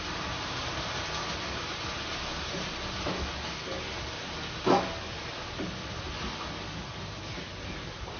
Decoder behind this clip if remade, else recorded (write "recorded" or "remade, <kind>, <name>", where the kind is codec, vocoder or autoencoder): recorded